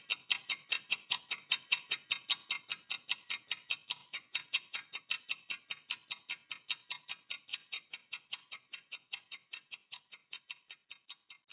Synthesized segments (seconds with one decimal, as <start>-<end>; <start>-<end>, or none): 0.7-2.0; 4.0-5.0; 7.5-10.4